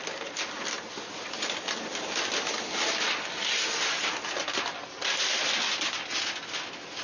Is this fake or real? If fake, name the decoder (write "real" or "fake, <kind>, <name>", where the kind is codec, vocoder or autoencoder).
real